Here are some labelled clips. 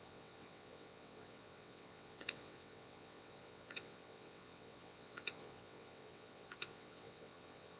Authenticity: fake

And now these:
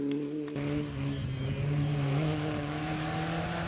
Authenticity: real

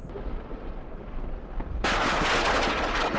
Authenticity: real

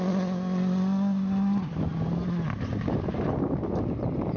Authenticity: real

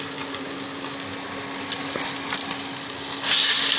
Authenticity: real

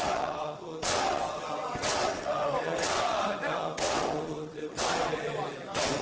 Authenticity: fake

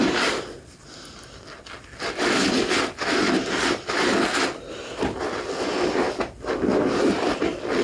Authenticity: real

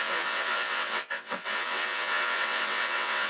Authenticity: fake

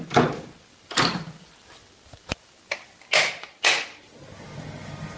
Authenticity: real